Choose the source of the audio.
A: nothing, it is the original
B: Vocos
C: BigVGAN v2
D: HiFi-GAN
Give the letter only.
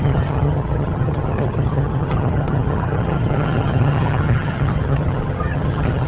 D